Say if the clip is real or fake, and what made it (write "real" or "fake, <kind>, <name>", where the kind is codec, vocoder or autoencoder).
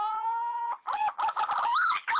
fake, vocoder, BigVGAN v2